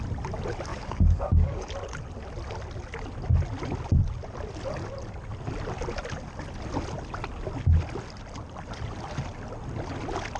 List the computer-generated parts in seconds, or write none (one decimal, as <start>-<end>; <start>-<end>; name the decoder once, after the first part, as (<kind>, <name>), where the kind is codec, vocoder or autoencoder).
0.7-1.7 (codec, DAC)